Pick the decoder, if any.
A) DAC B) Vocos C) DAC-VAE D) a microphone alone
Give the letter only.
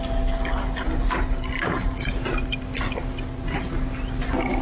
D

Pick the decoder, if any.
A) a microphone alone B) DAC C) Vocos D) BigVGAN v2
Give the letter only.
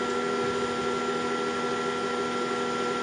A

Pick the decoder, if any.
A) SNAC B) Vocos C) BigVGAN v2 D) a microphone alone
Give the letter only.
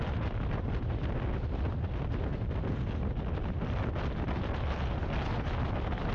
D